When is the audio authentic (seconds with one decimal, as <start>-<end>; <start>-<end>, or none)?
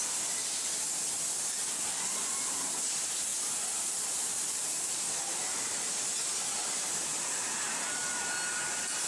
0.0-4.2; 6.0-6.5; 8.6-9.1